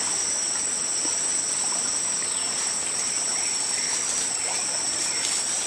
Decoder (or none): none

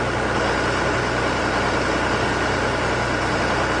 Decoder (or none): none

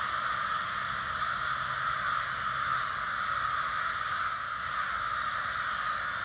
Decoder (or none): none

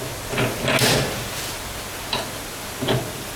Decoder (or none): none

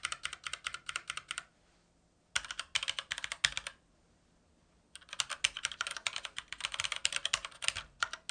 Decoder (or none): none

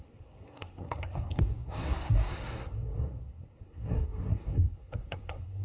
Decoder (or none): codec, SNAC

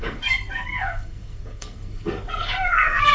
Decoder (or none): codec, SNAC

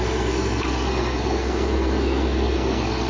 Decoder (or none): codec, SNAC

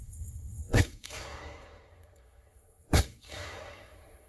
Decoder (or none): codec, SNAC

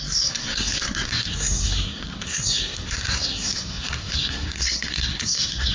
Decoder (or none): codec, SNAC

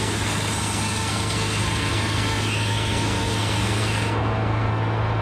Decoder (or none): codec, SNAC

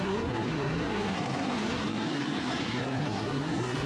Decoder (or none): codec, SNAC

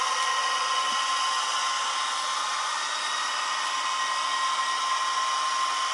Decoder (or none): none